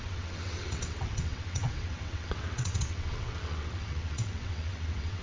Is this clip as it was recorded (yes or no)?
no